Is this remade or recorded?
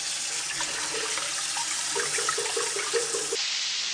recorded